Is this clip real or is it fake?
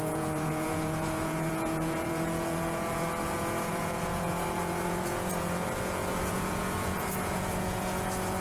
fake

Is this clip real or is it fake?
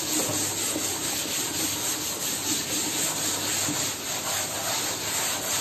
real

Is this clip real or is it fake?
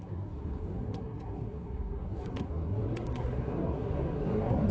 fake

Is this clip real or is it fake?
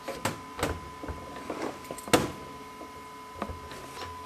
real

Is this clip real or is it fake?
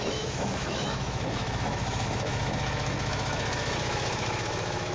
fake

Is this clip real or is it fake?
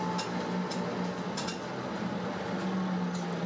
real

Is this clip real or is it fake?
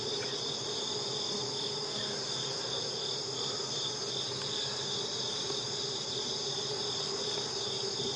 real